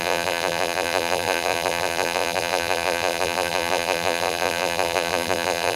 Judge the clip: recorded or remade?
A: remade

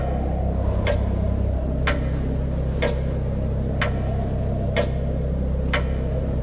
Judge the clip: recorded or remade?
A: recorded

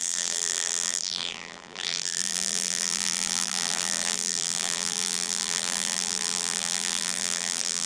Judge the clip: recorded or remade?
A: remade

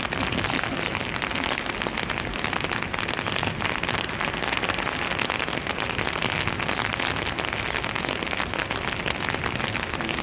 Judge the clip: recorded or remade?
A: recorded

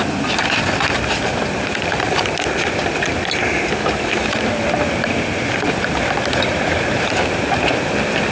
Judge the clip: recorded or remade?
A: remade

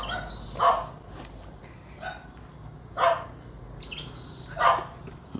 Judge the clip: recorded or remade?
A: recorded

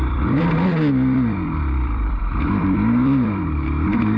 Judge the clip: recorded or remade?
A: remade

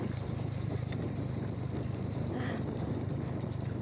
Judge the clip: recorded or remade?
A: remade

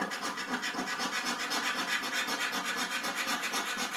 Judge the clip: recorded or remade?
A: recorded